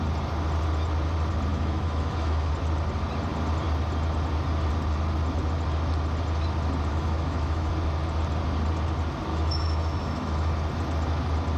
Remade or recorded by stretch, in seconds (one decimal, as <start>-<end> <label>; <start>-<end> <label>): 0.0-1.5 recorded; 1.5-2.5 remade; 2.5-6.9 recorded; 6.9-7.7 remade; 7.7-9.3 recorded; 9.3-10.5 remade; 10.5-11.6 recorded